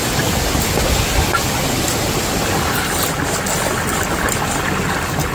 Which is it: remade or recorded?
recorded